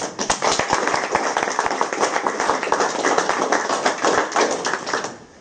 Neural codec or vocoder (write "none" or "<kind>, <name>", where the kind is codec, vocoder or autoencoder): none